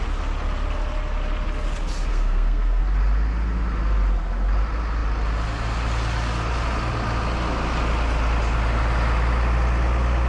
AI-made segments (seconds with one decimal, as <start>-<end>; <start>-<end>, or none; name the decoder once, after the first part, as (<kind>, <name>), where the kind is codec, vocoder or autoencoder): 2.1-2.8 (codec, SNAC)